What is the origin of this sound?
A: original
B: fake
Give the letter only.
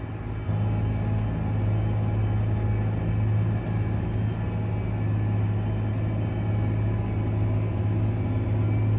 A